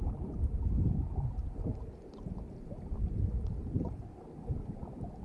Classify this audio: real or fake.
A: real